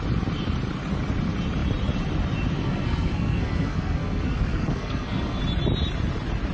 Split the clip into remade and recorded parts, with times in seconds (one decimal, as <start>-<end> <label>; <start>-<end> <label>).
0.0-2.6 recorded; 2.6-5.4 remade; 5.4-6.5 recorded